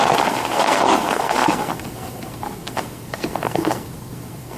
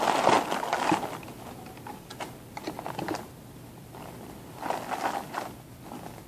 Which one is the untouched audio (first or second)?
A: second